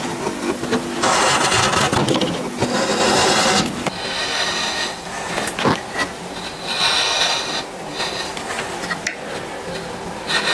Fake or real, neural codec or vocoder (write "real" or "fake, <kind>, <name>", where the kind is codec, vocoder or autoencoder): real